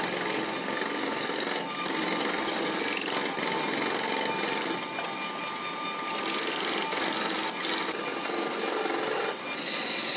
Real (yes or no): yes